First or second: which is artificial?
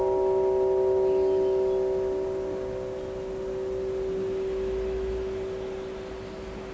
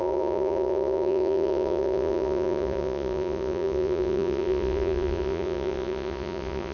second